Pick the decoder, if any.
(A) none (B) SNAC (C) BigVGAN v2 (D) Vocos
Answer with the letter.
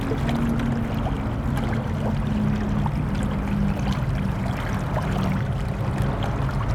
A